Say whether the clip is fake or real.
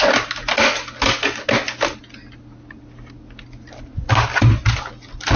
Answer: real